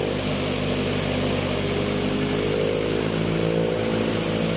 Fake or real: real